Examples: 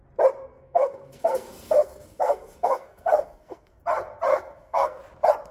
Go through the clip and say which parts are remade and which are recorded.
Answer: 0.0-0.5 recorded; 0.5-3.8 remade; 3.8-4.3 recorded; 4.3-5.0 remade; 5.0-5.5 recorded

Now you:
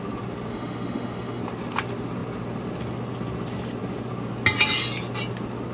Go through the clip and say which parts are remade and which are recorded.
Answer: 0.0-0.5 recorded; 0.5-1.4 remade; 1.4-5.7 recorded

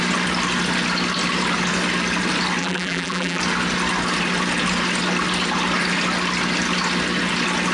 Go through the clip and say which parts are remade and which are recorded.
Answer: 0.0-2.6 recorded; 2.6-3.4 remade; 3.4-7.7 recorded